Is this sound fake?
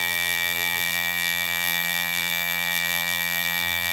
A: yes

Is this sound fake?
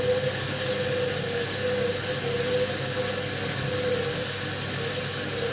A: no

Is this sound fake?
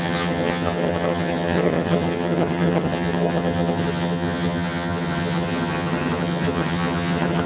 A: yes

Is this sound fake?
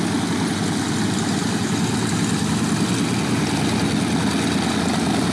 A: no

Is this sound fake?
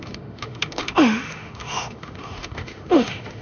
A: yes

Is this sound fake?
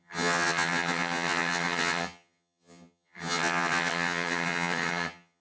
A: yes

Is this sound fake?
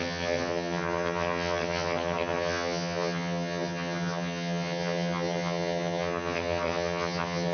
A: yes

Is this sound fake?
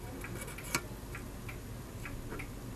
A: no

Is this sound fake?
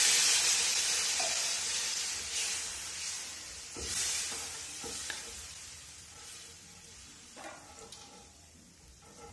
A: yes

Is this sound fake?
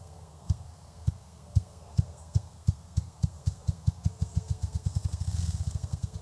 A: yes